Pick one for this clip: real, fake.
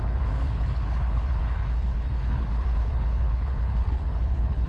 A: fake